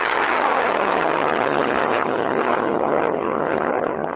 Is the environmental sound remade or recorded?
remade